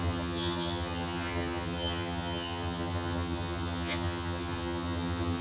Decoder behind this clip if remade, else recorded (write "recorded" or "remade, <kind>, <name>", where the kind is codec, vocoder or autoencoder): remade, vocoder, HiFi-GAN